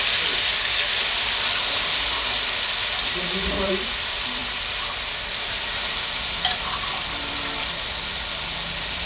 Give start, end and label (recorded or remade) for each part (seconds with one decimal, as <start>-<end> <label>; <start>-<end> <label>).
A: 0.0-0.5 remade; 0.5-3.6 recorded; 3.6-4.4 remade; 4.4-6.1 recorded; 6.1-9.1 remade